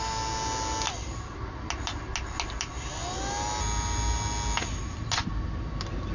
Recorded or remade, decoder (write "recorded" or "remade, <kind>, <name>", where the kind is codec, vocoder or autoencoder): recorded